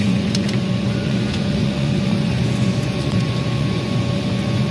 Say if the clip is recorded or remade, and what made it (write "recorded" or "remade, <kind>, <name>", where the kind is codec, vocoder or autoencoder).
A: remade, vocoder, Vocos